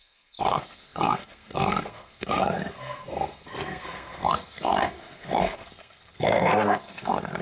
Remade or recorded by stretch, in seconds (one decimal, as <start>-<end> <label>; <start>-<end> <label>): 0.0-7.4 remade